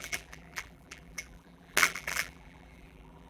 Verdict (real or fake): fake